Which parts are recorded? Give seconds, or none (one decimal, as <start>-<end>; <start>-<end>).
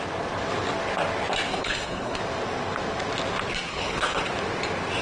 0.0-1.5; 2.2-3.7; 4.2-5.0